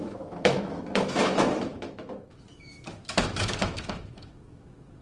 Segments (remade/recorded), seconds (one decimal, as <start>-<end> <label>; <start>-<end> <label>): 0.0-5.0 remade